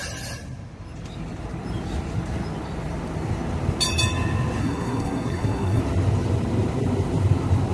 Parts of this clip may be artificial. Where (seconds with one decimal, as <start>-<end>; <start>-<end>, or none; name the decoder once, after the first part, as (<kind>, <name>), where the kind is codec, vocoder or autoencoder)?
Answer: 4.6-5.8 (codec, SNAC)

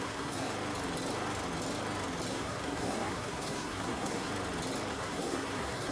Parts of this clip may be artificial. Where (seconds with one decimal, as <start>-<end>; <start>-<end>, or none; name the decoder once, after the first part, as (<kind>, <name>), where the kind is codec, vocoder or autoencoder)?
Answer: 0.0-0.5 (codec, SNAC); 2.3-4.3; 4.9-5.9